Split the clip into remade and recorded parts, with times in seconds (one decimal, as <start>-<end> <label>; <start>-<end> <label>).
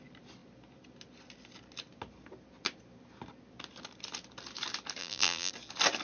0.0-5.0 recorded; 5.0-5.5 remade; 5.5-6.0 recorded